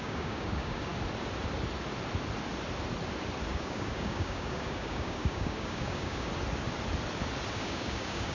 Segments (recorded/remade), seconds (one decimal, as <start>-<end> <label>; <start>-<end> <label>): 0.0-0.9 remade; 0.9-3.5 recorded; 3.5-6.3 remade; 6.3-7.5 recorded; 7.5-8.3 remade